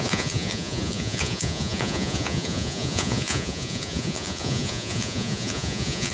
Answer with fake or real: fake